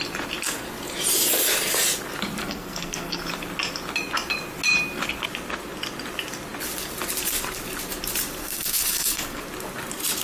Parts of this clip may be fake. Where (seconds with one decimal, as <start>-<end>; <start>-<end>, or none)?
2.4-3.2; 8.4-9.4